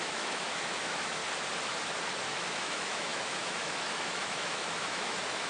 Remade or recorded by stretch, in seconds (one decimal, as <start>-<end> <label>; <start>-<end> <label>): 0.0-1.2 remade; 1.2-2.2 recorded; 2.2-5.5 remade